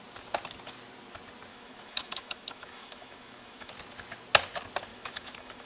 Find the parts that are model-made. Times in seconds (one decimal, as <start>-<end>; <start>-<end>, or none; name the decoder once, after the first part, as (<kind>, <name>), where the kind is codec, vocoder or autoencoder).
1.5-3.7 (autoencoder, DAC-VAE); 4.9-5.7